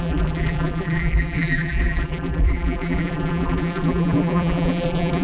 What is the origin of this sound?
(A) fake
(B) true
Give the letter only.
A